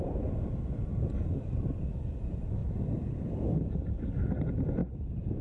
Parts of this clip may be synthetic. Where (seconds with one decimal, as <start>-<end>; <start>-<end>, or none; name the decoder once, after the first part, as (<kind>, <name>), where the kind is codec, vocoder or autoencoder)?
0.0-2.6 (vocoder, BigVGAN v2); 3.3-5.4